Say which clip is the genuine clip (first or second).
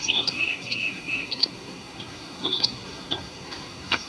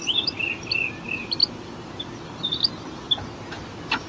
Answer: second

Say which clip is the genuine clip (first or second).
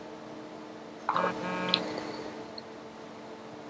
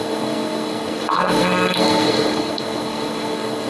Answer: first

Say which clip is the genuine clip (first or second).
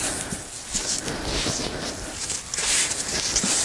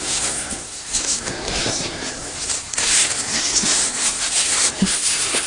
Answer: first